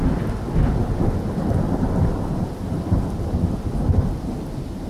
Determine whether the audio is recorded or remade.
recorded